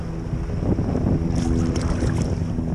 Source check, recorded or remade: recorded